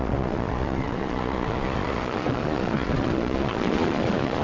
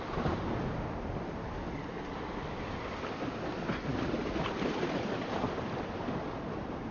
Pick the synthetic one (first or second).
first